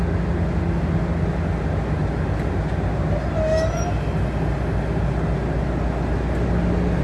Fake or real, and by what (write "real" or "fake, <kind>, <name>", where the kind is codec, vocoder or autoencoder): real